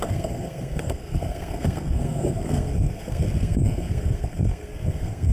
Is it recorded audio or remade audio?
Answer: remade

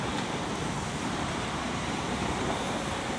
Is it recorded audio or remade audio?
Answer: remade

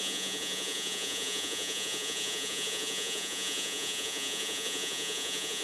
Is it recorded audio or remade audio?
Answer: remade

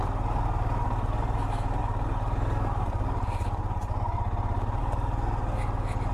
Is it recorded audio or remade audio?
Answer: recorded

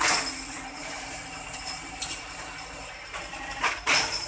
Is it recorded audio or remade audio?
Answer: recorded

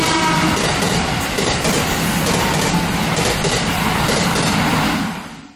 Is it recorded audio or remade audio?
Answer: recorded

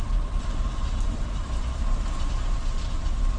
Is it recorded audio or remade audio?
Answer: remade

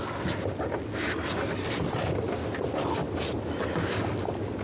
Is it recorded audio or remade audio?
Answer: recorded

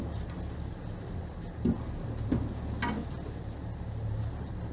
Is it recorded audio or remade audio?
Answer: recorded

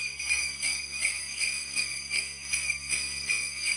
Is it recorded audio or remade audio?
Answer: remade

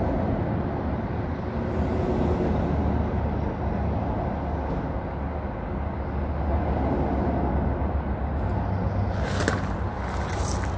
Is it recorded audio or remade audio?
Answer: recorded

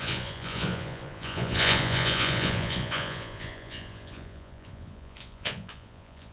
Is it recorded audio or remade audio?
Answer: remade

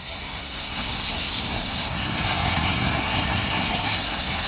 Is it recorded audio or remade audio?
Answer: remade